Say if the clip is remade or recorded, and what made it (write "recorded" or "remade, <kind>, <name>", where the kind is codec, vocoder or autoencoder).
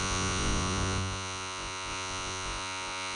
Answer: remade, vocoder, Vocos